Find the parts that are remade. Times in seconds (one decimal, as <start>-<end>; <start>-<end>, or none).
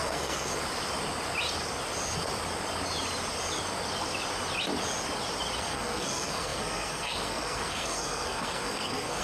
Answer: 0.0-0.5; 5.6-9.2